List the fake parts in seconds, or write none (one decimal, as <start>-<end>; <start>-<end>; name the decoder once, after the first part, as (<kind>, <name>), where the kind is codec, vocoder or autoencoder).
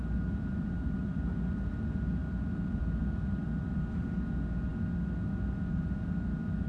0.0-1.7 (vocoder, BigVGAN v2); 2.2-3.8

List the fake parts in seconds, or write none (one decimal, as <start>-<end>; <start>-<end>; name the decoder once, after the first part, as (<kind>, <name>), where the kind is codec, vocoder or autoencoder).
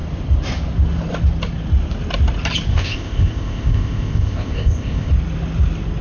2.7-5.1 (codec, ZipCodec)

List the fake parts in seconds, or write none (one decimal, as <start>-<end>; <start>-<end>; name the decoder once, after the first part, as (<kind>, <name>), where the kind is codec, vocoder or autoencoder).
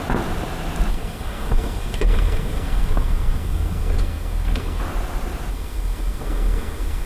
0.9-4.8 (codec, SNAC); 5.5-7.1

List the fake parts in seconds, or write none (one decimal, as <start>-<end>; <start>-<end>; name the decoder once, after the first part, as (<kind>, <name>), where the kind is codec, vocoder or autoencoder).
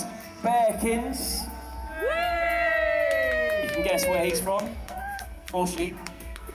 0.0-0.4 (codec, SNAC); 4.3-6.5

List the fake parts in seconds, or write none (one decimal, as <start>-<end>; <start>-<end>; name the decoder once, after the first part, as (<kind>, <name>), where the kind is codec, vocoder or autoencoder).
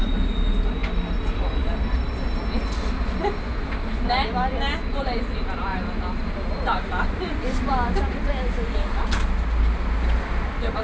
5.7-8.3 (vocoder, BigVGAN v2)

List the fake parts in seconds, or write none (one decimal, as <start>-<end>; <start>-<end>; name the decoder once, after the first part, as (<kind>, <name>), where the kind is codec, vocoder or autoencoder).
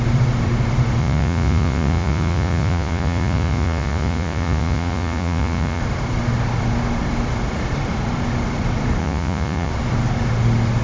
1.0-5.8 (vocoder, Vocos); 9.0-9.7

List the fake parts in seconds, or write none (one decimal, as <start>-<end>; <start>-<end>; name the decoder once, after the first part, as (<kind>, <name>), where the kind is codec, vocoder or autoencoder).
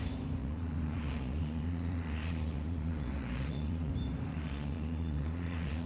0.4-3.9 (vocoder, Vocos); 4.3-5.9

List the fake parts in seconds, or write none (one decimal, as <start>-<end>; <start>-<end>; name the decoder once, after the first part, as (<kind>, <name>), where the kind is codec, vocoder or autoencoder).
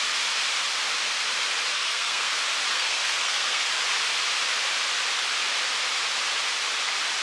1.7-2.3 (codec, SNAC); 2.7-3.7